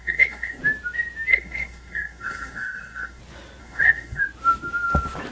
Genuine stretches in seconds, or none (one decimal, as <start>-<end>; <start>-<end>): 0.6-1.3; 3.2-3.6; 4.2-5.3